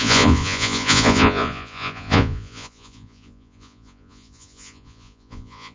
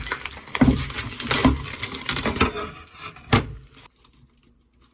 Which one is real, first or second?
second